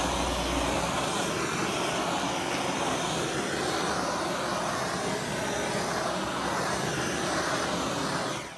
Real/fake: real